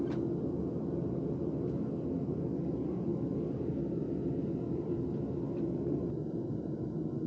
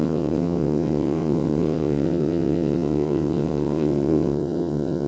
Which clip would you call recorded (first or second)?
first